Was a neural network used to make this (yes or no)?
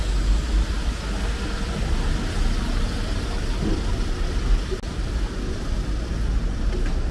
no